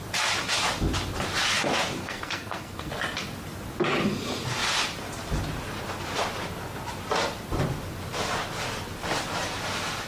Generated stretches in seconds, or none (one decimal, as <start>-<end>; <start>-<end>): 2.0-2.9

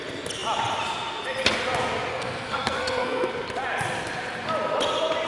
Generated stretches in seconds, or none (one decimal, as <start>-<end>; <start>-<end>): 2.1-3.3

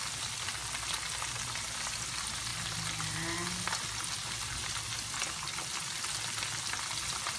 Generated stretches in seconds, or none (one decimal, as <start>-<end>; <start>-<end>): none

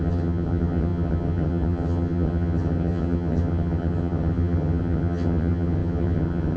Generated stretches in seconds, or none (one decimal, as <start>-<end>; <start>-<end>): 0.0-6.6

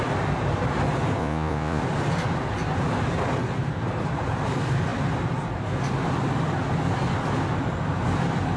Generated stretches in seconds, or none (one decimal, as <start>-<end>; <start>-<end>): 1.2-1.8

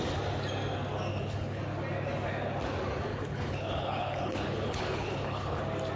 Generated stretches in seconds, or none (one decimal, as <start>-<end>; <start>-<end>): 1.1-1.6; 3.1-5.6

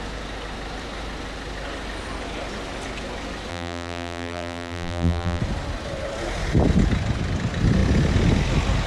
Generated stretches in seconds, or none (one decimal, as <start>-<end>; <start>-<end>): 3.5-5.4